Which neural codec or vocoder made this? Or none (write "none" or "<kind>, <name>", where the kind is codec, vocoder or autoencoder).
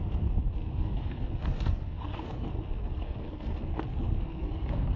codec, SNAC